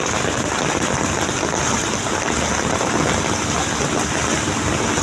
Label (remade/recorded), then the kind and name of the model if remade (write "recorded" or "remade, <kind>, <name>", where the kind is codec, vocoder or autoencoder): recorded